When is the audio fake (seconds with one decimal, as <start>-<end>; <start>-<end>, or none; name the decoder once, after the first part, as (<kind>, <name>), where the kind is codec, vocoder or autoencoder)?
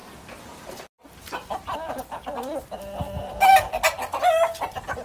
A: 0.0-3.0 (vocoder, BigVGAN v2)